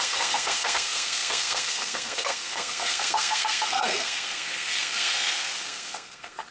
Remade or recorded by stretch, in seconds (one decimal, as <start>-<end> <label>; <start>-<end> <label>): 0.0-6.5 remade